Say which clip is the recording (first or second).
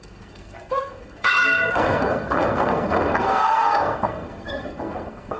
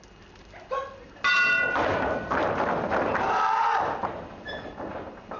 second